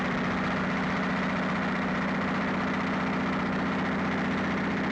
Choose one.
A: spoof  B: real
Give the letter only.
B